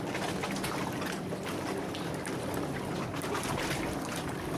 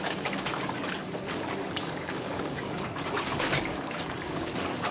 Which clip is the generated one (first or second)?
second